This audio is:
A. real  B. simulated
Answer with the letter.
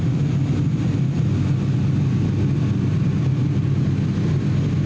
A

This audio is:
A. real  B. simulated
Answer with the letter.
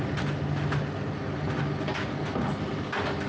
A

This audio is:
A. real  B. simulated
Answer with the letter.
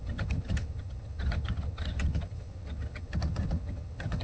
B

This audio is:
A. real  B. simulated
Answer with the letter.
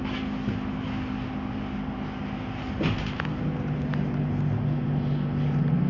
A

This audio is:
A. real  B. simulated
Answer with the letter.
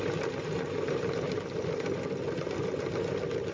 A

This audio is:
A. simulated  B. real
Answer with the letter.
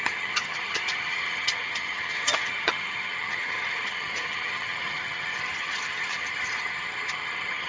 A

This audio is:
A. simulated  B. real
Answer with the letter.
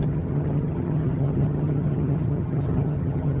A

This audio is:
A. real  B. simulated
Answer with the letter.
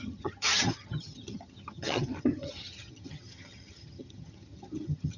B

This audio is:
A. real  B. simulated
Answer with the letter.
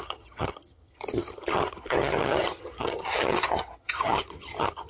B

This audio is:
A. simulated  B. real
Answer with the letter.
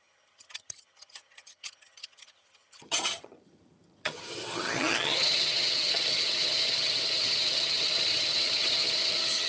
A